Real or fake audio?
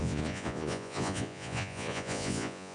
fake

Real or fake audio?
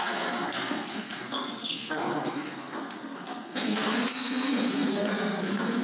fake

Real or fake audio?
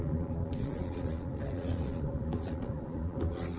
fake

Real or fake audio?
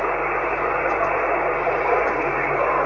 real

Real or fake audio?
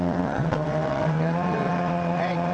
fake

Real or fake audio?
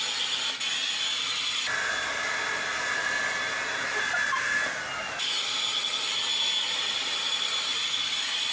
real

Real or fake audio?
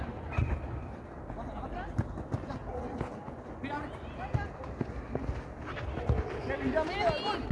real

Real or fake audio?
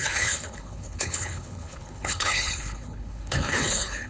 fake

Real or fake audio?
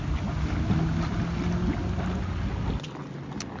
real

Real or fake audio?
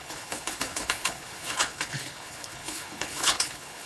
fake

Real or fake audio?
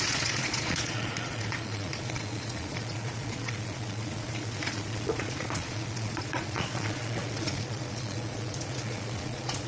fake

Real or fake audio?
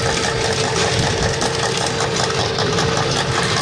real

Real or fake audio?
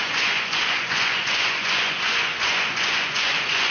fake